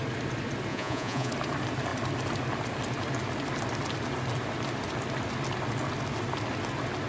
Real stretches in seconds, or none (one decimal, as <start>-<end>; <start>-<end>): 0.0-0.7; 1.3-7.1